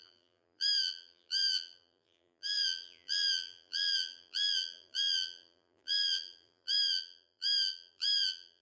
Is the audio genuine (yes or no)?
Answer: no